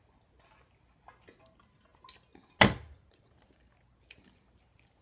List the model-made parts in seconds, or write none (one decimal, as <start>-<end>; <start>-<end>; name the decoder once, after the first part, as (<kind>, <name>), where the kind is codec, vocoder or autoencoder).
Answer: none